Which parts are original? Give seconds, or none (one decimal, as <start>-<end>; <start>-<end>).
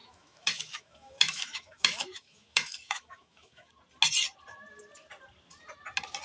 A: 3.7-6.2